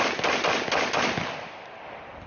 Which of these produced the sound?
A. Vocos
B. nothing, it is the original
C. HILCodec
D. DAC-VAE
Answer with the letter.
B